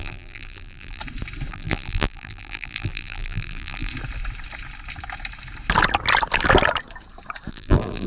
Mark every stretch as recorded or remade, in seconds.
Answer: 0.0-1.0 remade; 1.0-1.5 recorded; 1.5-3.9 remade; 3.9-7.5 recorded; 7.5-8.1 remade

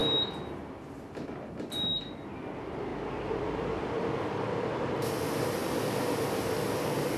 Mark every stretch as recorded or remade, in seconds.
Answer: 0.0-5.6 remade; 5.6-6.4 recorded; 6.4-7.2 remade

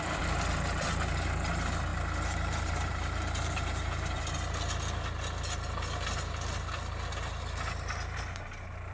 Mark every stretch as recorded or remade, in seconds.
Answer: 0.0-1.9 recorded; 1.9-4.2 remade; 4.2-8.9 recorded

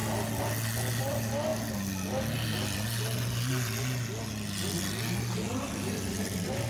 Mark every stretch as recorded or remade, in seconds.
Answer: 0.0-1.0 recorded; 1.0-1.5 remade; 1.5-5.5 recorded; 5.5-6.7 remade